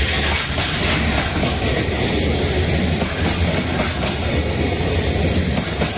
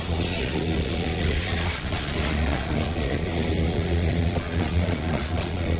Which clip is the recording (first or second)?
first